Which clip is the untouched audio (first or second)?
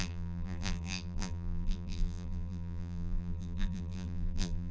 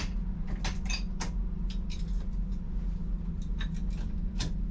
second